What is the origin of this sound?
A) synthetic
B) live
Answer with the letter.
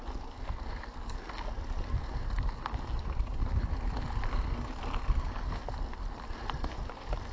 B